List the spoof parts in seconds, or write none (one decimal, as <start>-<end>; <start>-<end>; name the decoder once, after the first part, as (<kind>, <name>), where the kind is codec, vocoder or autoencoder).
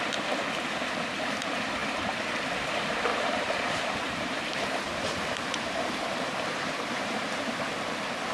3.1-7.5 (vocoder, BigVGAN v2)